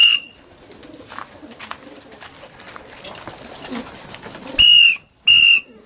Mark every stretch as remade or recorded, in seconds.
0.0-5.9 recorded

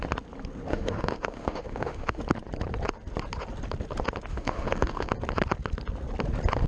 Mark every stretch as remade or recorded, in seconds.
0.0-0.7 recorded; 0.7-2.2 remade; 2.2-4.3 recorded; 4.3-5.1 remade; 5.1-6.7 recorded

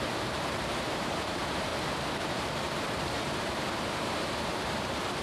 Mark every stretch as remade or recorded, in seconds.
0.0-1.7 remade; 1.7-2.2 recorded; 2.2-5.2 remade

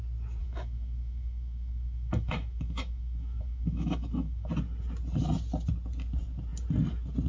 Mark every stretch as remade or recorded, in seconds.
0.0-0.4 recorded; 0.4-4.5 remade; 4.5-7.3 recorded